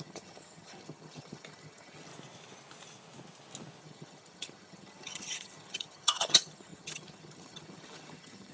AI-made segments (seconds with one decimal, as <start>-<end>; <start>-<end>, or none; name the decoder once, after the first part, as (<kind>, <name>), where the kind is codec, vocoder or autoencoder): 0.0-2.1 (vocoder, HiFi-GAN); 3.8-8.5